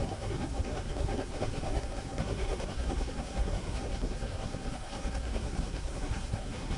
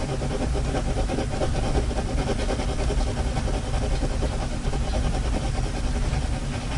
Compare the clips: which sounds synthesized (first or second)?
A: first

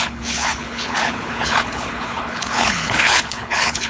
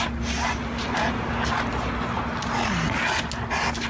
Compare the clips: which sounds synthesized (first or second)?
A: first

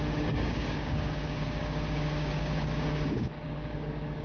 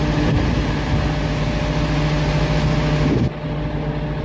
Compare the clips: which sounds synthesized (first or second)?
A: first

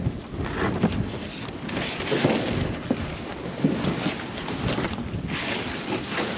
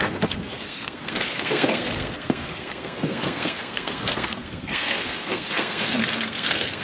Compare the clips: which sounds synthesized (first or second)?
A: second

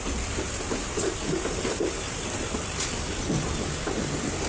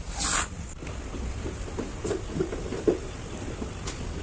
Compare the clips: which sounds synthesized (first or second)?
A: first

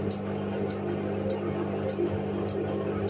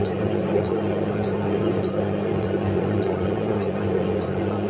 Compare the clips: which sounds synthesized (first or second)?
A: second